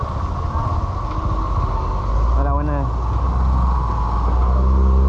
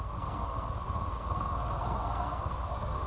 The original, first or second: first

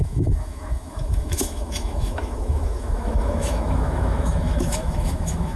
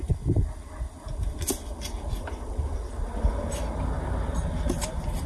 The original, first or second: second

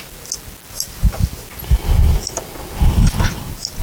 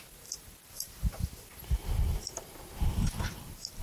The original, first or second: first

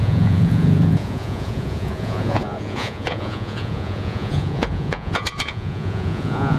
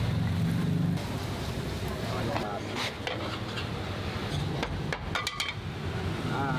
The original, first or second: second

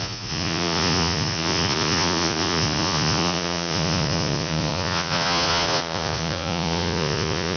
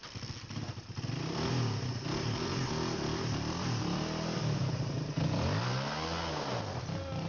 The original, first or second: second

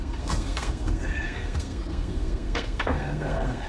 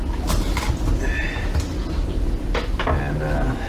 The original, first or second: second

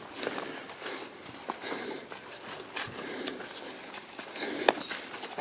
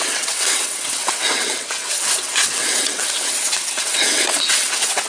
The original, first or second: first